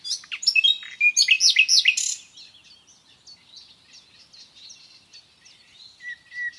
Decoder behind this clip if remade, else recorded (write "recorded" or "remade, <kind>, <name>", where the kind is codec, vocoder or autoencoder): recorded